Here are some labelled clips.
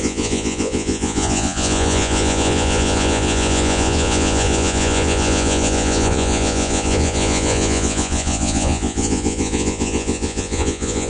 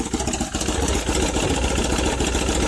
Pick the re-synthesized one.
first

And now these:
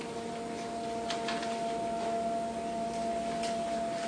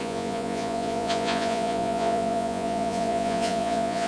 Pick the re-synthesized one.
second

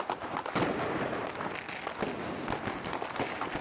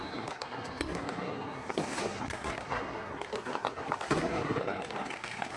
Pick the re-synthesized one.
second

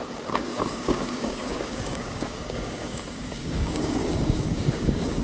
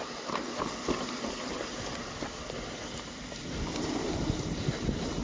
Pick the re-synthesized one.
first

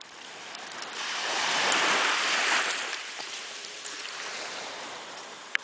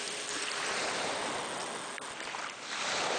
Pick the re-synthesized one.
first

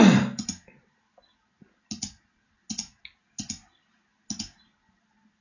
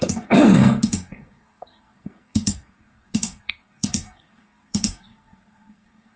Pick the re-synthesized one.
second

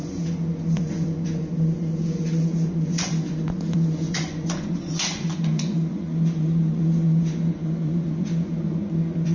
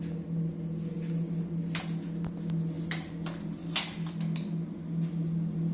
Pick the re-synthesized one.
first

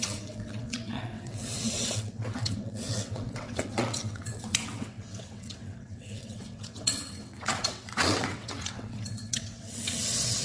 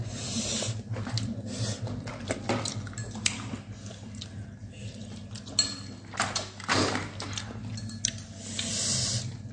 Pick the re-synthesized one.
first